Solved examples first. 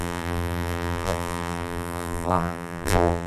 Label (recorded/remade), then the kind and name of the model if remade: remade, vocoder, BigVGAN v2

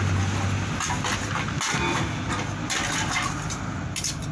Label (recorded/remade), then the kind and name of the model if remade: recorded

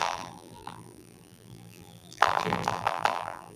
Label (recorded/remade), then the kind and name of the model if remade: remade, vocoder, BigVGAN v2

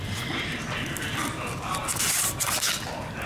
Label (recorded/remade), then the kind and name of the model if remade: remade, vocoder, BigVGAN v2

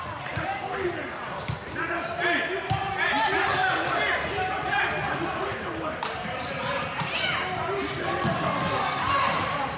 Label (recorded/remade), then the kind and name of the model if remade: recorded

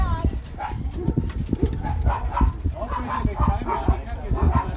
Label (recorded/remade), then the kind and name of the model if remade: remade, vocoder, BigVGAN v2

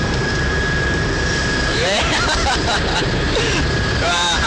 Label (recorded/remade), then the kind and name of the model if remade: remade, vocoder, BigVGAN v2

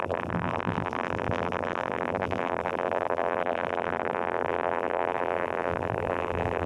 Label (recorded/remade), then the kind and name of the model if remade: remade, vocoder, BigVGAN v2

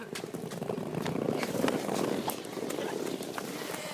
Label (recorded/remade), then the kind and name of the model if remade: remade, vocoder, BigVGAN v2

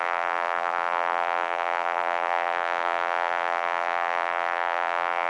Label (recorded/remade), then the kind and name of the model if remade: remade, vocoder, BigVGAN v2